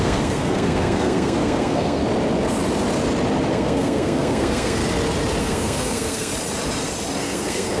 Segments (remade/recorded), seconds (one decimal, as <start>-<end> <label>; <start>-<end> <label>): 0.0-2.0 remade; 2.0-3.5 recorded; 3.5-4.8 remade; 4.8-5.4 recorded; 5.4-6.3 remade; 6.3-7.2 recorded; 7.2-7.8 remade